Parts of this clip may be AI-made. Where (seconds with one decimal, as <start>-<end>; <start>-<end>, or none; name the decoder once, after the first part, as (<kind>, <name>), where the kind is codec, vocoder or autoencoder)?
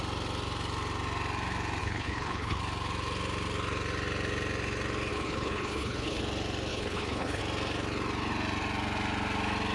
1.8-2.6 (codec, HILCodec); 5.1-6.2; 6.7-7.4